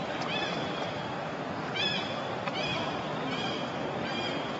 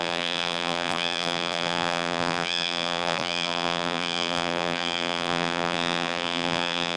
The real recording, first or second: first